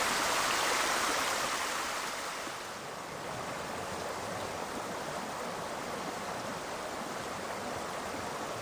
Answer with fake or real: real